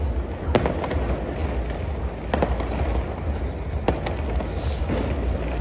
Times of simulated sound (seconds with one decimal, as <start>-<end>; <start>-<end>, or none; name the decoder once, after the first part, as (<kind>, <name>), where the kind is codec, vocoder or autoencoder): none